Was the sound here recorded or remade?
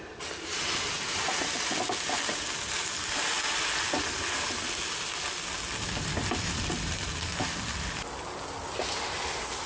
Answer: recorded